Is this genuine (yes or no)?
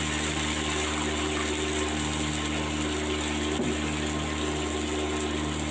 yes